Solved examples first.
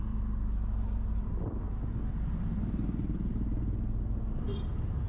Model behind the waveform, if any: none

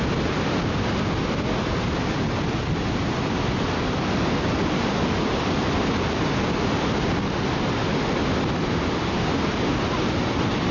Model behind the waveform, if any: none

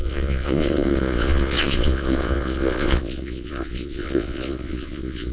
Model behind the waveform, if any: vocoder, Vocos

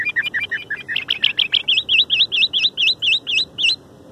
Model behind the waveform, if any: none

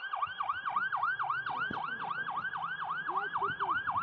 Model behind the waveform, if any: none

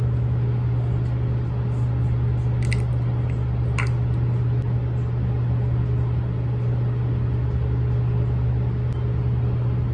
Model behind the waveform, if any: none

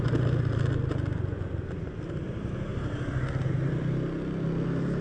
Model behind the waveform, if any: none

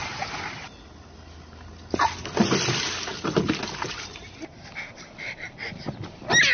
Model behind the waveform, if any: none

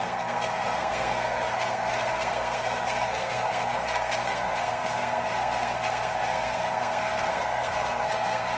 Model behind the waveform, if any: codec, SNAC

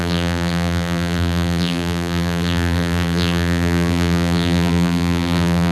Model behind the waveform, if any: vocoder, BigVGAN v2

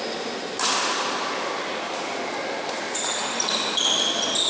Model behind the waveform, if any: none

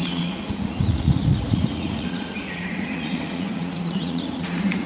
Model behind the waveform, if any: vocoder, Vocos